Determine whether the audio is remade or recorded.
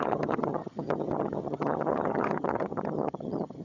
remade